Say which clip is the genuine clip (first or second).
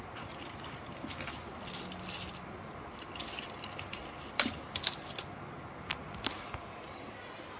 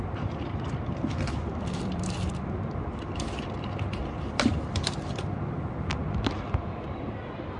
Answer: first